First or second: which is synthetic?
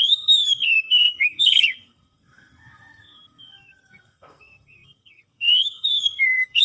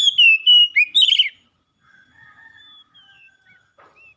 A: first